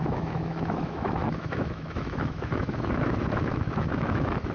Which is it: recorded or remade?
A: remade